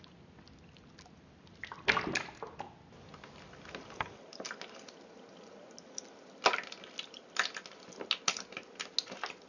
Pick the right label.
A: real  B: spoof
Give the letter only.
A